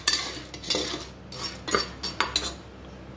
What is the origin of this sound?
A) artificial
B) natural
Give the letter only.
B